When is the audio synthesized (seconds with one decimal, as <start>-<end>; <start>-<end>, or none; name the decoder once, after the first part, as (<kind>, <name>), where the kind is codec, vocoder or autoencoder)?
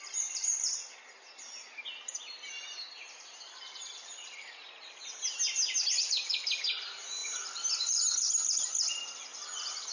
none